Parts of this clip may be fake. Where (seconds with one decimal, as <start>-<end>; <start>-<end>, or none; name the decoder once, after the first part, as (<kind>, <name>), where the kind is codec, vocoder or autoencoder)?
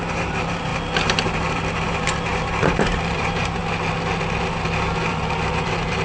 0.0-0.7 (vocoder, BigVGAN v2); 1.3-3.6; 4.4-6.0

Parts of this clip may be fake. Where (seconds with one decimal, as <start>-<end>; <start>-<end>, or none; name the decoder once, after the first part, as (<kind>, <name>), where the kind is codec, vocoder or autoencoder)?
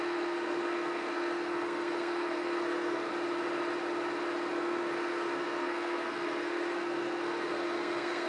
0.0-3.1 (codec, SNAC); 4.5-8.3